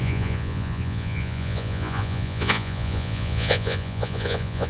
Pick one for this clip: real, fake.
fake